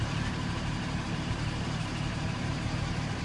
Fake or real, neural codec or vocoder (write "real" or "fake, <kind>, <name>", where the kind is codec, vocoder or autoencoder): fake, vocoder, BigVGAN v2